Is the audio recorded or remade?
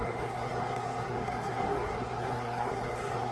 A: remade